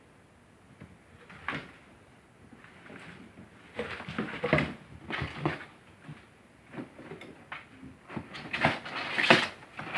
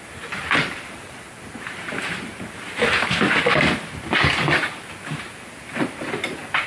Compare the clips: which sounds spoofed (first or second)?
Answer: second